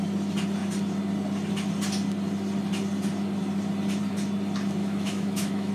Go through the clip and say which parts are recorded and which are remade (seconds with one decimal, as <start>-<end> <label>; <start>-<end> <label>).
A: 0.0-4.8 recorded; 4.8-5.7 remade